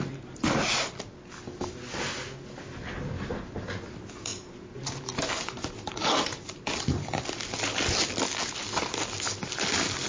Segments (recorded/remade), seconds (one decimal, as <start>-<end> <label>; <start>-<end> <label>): 0.0-4.3 recorded; 4.3-7.2 remade; 7.2-10.1 recorded

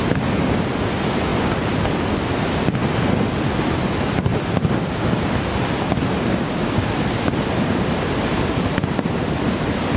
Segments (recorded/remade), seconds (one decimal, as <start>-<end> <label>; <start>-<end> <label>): 0.0-2.8 remade; 2.8-3.5 recorded; 3.5-4.3 remade; 4.3-9.2 recorded; 9.2-10.0 remade

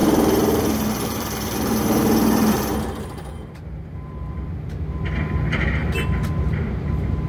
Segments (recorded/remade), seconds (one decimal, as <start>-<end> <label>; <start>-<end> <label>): 0.0-4.4 remade; 4.4-5.8 recorded; 5.8-7.3 remade

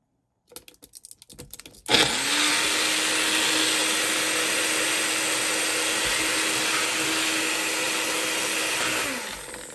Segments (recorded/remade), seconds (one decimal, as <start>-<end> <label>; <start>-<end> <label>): 0.0-9.7 recorded

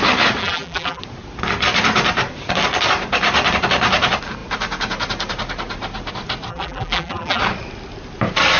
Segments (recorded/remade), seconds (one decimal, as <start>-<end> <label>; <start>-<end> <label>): 0.0-0.4 recorded; 0.4-1.0 remade; 1.0-6.5 recorded; 6.5-7.4 remade; 7.4-8.6 recorded

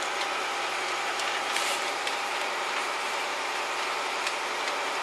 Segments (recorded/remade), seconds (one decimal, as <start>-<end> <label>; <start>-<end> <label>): 0.0-0.4 recorded; 0.4-2.4 remade; 2.4-2.8 recorded; 2.8-4.5 remade; 4.5-5.0 recorded

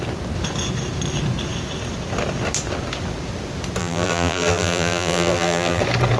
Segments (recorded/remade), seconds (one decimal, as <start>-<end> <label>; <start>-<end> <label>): 0.0-3.8 recorded; 3.8-5.8 remade; 5.8-6.2 recorded

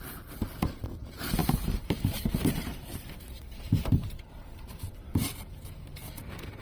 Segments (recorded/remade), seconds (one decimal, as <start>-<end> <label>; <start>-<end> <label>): 0.0-6.6 remade